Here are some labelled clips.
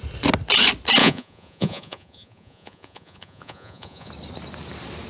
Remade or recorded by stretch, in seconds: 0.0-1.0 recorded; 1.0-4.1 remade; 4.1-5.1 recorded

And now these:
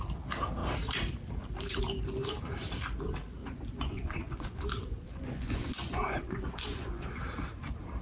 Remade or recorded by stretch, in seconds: 0.0-3.4 recorded; 3.4-7.2 remade; 7.2-8.0 recorded

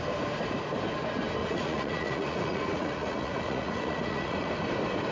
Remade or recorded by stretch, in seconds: 0.0-1.4 recorded; 1.4-4.5 remade; 4.5-5.1 recorded

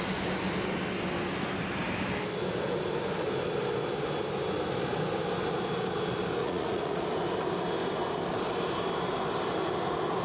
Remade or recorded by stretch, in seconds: 0.0-6.4 recorded; 6.4-7.0 remade; 7.0-10.2 recorded